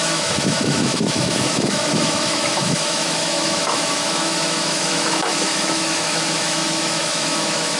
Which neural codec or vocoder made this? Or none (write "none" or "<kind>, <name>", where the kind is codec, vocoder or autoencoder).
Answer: autoencoder, DAC-VAE